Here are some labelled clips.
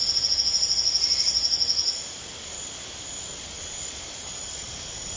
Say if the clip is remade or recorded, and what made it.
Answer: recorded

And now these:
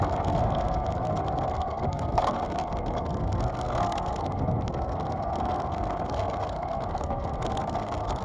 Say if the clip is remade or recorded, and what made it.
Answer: remade, codec, SNAC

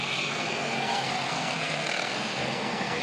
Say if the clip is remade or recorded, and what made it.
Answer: remade, codec, SNAC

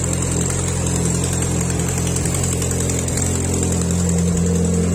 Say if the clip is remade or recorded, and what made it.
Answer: recorded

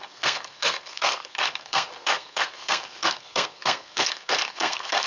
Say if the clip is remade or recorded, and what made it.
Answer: remade, codec, SNAC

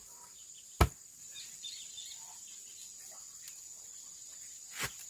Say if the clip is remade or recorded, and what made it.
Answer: recorded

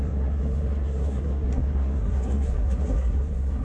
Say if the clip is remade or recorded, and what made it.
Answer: remade, codec, SNAC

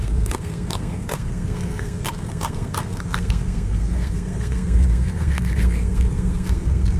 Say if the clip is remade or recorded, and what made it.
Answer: remade, codec, SNAC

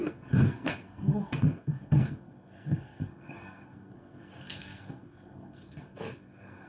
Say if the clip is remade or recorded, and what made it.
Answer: remade, codec, SNAC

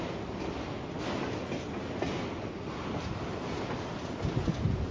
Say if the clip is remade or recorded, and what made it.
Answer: recorded